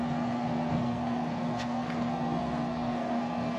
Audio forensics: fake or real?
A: fake